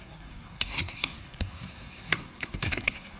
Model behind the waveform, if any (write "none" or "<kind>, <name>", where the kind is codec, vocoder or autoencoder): codec, SNAC